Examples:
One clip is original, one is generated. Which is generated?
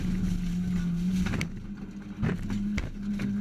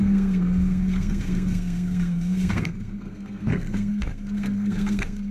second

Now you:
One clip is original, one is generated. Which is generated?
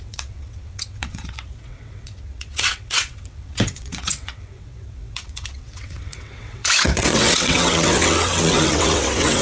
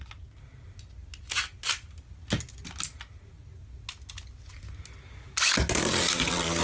first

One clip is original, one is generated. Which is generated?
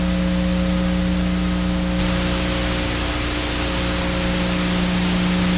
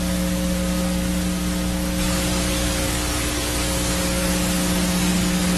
second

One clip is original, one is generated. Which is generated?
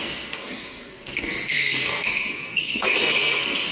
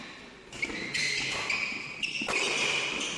first